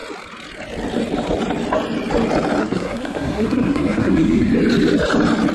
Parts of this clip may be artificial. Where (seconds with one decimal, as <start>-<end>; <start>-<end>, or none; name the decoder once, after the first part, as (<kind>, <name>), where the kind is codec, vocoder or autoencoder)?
2.6-4.5 (codec, SNAC)